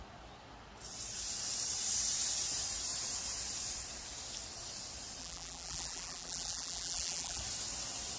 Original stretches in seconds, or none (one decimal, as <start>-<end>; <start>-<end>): 0.0-5.2; 7.4-8.2